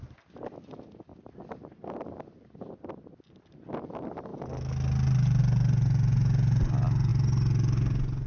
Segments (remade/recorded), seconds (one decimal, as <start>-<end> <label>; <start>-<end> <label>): 0.0-8.3 recorded